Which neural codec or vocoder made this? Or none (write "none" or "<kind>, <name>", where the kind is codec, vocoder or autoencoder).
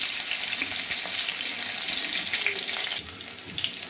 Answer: none